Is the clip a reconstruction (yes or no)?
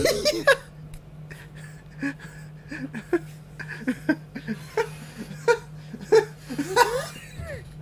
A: no